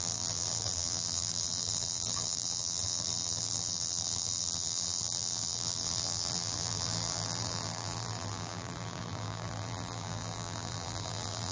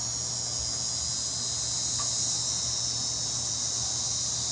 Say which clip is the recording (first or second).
second